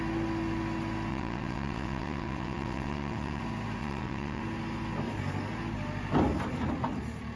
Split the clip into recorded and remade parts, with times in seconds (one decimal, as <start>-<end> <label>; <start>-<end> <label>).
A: 0.0-1.1 recorded; 1.1-3.4 remade; 3.4-3.8 recorded; 3.8-4.4 remade; 4.4-7.4 recorded